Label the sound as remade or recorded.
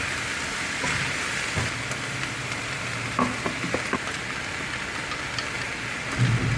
recorded